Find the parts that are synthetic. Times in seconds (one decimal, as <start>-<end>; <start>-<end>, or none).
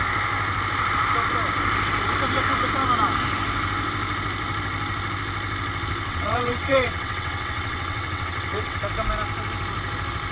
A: 6.1-8.8